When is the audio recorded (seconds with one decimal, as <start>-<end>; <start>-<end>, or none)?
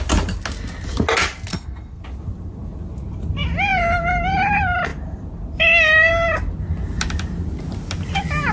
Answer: 0.0-1.5; 2.0-8.5